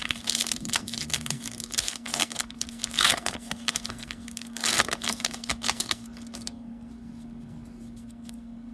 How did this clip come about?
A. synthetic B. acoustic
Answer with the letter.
A